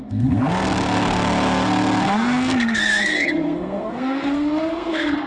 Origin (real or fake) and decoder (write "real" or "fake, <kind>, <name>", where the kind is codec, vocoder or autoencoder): fake, codec, SNAC